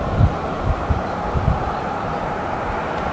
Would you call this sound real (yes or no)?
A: no